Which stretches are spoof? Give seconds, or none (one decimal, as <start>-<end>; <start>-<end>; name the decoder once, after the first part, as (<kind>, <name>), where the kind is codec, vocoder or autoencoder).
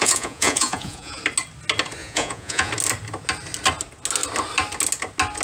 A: 0.0-1.2 (vocoder, Vocos); 2.0-2.7